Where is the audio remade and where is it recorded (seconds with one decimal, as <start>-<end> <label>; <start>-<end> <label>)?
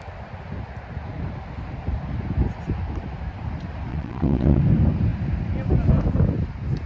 0.0-3.9 recorded; 3.9-4.6 remade; 4.6-6.9 recorded